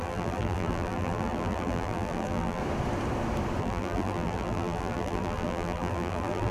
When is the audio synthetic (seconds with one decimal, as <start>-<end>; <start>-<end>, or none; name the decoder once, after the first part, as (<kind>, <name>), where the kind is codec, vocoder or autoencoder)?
0.0-2.6 (vocoder, BigVGAN v2); 3.6-6.5